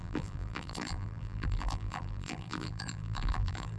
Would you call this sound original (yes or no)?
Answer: no